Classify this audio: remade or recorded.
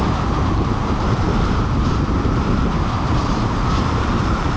remade